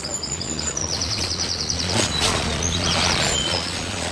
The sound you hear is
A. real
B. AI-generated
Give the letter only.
B